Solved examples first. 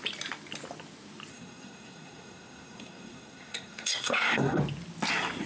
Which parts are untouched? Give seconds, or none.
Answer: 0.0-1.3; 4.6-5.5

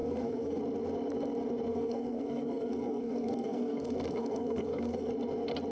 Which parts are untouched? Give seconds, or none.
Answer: 0.6-1.7; 5.1-5.7

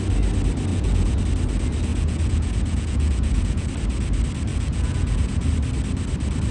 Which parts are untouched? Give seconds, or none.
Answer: 0.0-0.7; 1.2-1.9; 3.7-4.5; 5.5-6.5

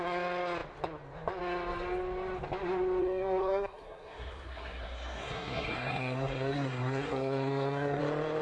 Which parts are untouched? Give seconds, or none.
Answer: 0.0-3.0; 8.0-8.4

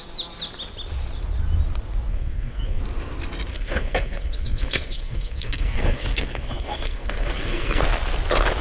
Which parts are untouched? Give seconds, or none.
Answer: 0.0-2.1; 2.8-3.5; 7.8-8.6

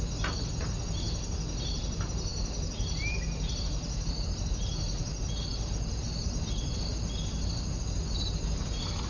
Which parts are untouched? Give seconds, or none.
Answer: 0.0-9.1

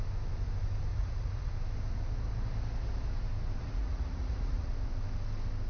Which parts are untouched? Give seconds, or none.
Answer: 0.0-0.9; 1.5-3.6; 4.7-5.7